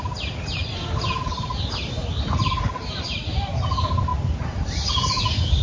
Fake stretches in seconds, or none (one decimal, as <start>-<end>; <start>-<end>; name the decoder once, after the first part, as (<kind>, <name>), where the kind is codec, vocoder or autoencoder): none